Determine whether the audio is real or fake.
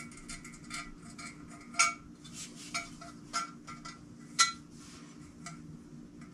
real